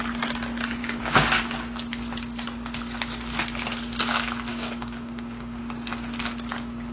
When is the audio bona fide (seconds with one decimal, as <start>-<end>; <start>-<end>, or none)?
0.0-0.8; 1.4-4.5; 5.6-6.9

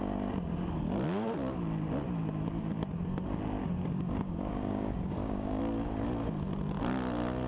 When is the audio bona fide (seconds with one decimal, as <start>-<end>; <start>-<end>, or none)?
0.0-3.6; 5.6-7.5

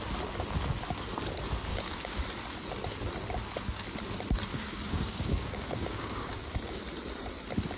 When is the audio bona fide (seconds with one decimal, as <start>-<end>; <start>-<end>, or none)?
0.0-1.7; 2.2-4.5; 6.8-7.8

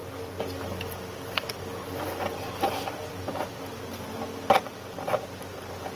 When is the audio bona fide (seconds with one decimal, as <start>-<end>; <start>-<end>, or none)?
0.0-6.0

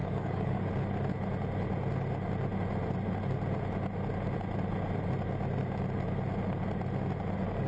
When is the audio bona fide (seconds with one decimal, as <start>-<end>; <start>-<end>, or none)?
0.7-7.7